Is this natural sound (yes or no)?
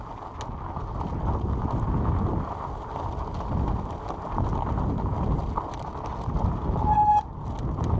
yes